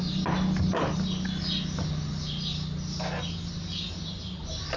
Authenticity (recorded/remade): recorded